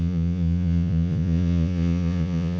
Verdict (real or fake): fake